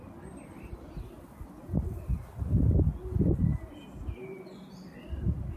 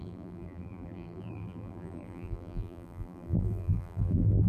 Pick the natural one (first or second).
first